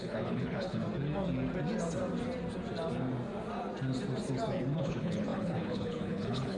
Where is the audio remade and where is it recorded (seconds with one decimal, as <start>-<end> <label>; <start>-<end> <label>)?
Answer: 0.0-0.8 remade; 0.8-4.8 recorded; 4.8-6.6 remade